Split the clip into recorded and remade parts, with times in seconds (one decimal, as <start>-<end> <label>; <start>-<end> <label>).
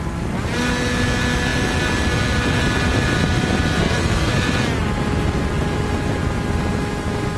0.0-3.8 recorded; 3.8-4.3 remade; 4.3-7.4 recorded